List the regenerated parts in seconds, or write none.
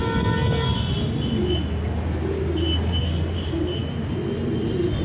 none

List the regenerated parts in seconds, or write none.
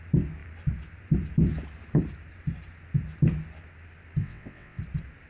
4.2-4.8 (vocoder, WaveNeXt)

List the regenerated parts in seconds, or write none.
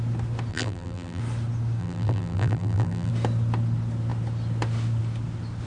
0.5-1.2 (vocoder, BigVGAN v2); 1.8-3.1